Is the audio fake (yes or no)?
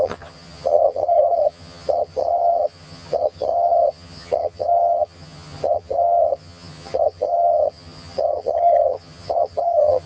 yes